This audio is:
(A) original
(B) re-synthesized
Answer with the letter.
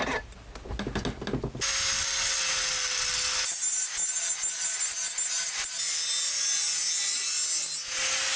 A